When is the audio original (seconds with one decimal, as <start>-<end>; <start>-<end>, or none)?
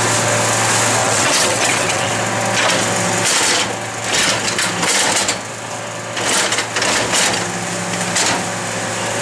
0.0-1.0; 2.1-9.2